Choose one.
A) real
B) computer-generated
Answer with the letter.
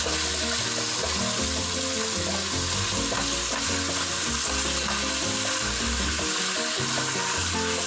A